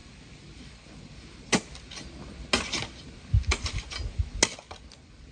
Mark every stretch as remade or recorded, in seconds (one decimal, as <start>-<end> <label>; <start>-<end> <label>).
0.0-5.3 recorded